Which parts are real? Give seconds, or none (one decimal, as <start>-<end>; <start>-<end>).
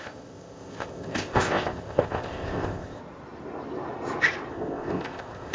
3.0-4.5